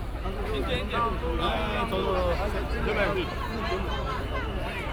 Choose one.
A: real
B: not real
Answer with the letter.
A